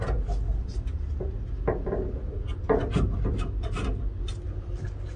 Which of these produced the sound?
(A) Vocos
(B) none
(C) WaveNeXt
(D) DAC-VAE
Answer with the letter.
B